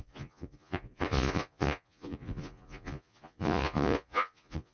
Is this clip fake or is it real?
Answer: fake